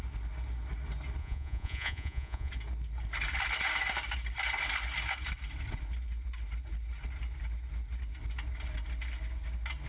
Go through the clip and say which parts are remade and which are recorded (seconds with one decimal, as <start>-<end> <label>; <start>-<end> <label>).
0.0-1.2 recorded; 1.2-2.5 remade; 2.5-9.9 recorded